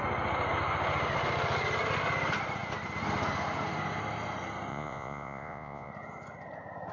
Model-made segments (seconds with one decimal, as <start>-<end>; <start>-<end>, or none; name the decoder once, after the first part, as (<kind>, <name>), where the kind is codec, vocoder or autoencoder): 4.7-5.9 (vocoder, Vocos)